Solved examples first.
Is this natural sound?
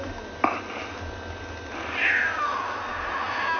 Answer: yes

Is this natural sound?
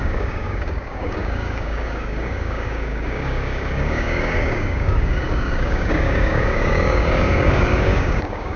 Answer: no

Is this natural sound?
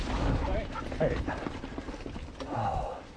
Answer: no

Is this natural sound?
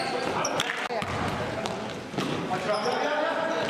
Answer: yes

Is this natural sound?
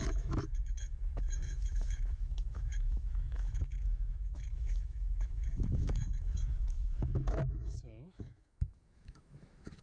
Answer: no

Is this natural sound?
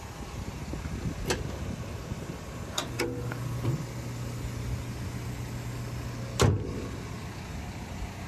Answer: yes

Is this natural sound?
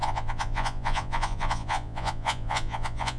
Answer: no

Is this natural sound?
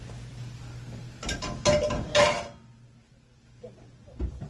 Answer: yes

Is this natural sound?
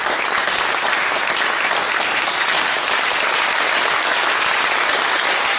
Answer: yes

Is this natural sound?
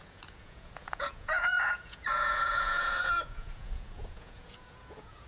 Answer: no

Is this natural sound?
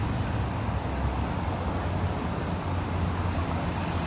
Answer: yes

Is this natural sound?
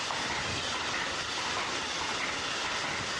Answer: yes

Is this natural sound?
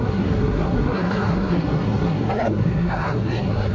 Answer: no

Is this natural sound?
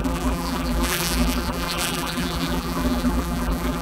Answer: no